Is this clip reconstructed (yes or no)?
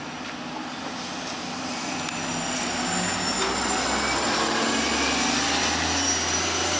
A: no